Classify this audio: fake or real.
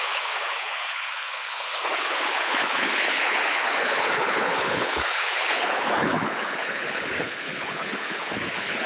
fake